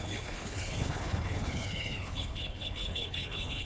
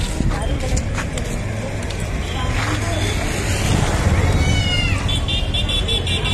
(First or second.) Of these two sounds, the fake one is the first